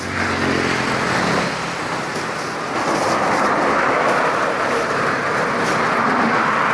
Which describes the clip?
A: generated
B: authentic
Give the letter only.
B